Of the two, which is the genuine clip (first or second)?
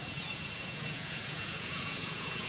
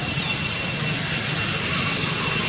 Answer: second